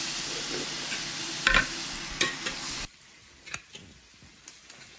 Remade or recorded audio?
recorded